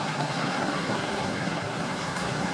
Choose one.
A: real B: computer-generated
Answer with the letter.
B